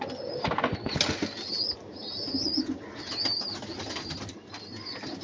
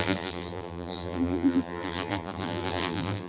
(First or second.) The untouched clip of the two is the first